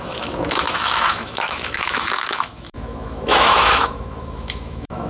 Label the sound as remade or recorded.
remade